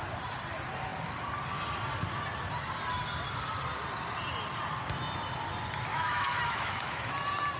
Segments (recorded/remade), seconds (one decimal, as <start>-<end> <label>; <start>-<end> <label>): 0.0-5.9 recorded; 5.9-7.1 remade; 7.1-7.6 recorded